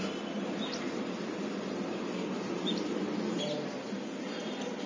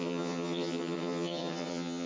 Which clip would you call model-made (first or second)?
second